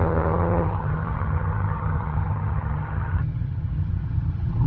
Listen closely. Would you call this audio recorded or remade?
remade